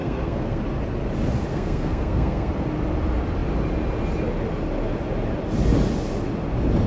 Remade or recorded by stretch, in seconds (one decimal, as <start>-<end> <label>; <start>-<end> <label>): 0.0-0.6 remade; 0.6-1.5 recorded; 1.5-2.5 remade; 2.5-6.9 recorded